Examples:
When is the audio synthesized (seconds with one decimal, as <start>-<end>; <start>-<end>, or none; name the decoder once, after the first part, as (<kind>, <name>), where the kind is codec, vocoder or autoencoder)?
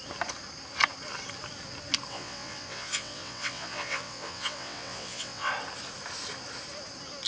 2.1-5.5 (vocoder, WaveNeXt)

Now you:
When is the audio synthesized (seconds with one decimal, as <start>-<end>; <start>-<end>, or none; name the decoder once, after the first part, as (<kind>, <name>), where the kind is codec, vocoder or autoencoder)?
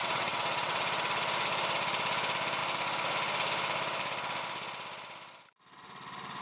0.0-0.8 (vocoder, WaveNeXt)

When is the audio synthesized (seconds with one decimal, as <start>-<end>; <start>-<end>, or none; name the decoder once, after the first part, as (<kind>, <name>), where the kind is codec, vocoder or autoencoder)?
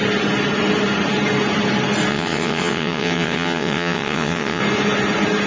2.1-4.6 (vocoder, WaveNeXt)